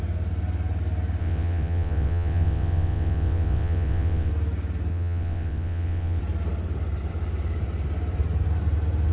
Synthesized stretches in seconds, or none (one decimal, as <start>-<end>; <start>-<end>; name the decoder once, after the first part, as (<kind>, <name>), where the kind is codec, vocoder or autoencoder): 1.2-4.3 (vocoder, WaveNeXt); 4.9-6.2